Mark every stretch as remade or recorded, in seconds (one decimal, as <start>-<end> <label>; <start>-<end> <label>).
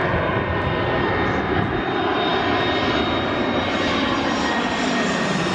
0.0-5.5 recorded